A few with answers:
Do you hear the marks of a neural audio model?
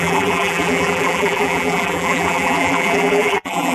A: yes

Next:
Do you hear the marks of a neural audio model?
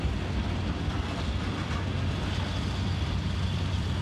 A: no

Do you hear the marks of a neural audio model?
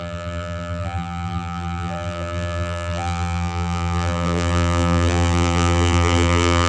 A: yes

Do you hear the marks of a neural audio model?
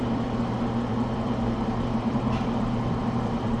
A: yes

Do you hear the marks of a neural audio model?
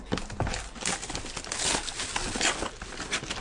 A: no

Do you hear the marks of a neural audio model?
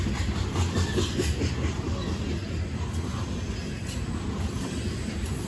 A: no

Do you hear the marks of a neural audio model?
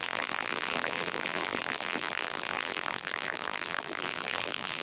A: yes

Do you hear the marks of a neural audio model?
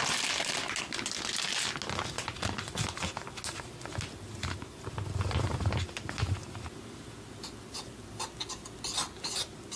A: no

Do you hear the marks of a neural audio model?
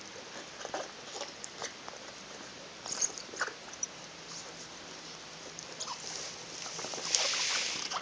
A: yes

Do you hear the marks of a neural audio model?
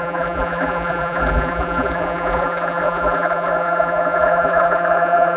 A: yes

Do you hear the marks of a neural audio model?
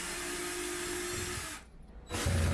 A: no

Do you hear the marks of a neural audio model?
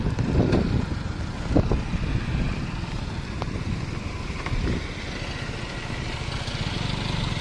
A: no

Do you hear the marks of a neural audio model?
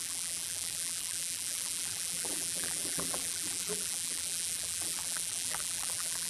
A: yes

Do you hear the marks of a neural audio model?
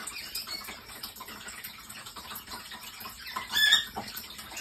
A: no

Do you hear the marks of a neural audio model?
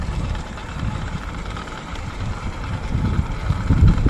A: yes